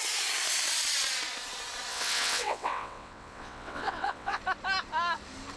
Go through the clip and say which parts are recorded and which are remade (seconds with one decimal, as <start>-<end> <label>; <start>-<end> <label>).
0.0-1.9 recorded; 1.9-4.4 remade; 4.4-5.6 recorded